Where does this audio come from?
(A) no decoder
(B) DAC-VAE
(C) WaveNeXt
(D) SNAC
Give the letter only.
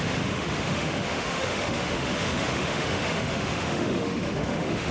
B